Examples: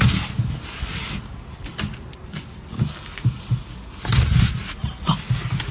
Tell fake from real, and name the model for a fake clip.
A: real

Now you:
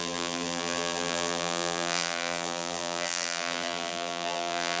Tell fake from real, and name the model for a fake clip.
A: fake, vocoder, BigVGAN v2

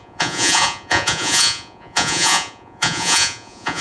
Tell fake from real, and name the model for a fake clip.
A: fake, vocoder, Vocos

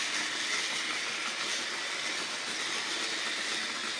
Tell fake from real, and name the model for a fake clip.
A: real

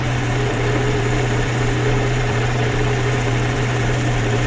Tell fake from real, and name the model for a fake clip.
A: fake, vocoder, BigVGAN v2